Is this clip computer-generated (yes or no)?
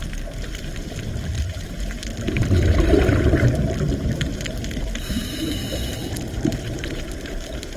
yes